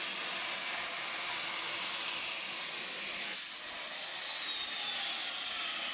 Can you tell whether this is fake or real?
real